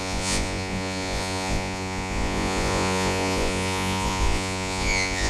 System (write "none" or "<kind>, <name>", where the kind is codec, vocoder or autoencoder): vocoder, Vocos